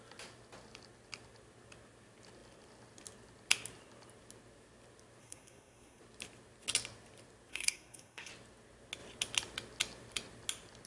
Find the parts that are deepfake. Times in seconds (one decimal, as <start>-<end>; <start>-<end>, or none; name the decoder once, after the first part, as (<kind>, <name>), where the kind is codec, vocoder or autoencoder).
5.2-6.0 (codec, SNAC); 7.5-8.3